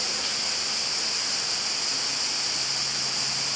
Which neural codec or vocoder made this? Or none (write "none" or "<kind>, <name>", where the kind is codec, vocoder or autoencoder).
none